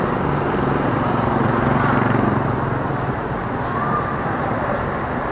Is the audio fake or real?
real